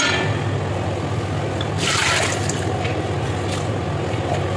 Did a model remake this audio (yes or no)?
no